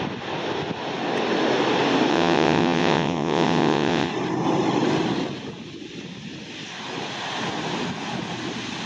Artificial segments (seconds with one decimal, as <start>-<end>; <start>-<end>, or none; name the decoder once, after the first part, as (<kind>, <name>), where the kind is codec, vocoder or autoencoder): 2.1-4.1 (vocoder, WaveNeXt)